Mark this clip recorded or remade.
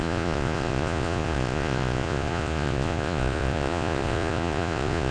remade